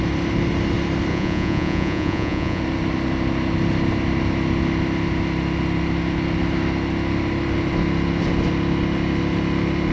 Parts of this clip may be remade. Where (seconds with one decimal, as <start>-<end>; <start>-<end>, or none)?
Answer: 1.1-2.6